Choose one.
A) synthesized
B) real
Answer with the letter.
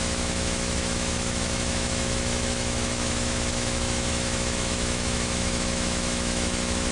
A